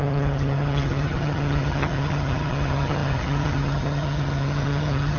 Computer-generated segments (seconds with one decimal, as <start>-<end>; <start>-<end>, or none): 0.0-5.2